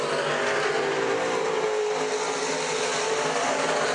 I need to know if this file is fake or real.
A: real